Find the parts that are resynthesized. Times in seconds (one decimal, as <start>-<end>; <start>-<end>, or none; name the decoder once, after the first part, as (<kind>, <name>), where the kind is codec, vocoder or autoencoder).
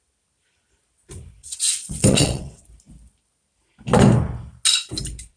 1.4-2.6 (vocoder, WaveNeXt)